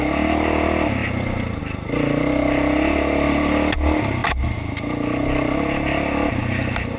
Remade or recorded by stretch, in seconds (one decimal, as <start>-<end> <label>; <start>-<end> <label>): 0.0-7.0 recorded